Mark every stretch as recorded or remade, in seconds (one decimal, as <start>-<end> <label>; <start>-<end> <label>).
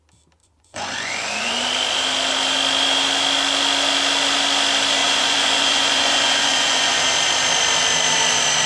0.0-0.4 recorded; 0.4-1.5 remade; 1.5-5.0 recorded; 5.0-7.0 remade; 7.0-8.7 recorded